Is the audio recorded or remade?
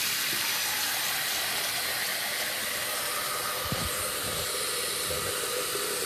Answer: remade